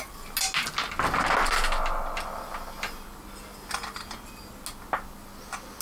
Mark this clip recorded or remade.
recorded